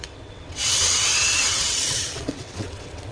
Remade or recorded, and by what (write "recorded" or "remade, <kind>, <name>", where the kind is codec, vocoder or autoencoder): remade, vocoder, WaveNeXt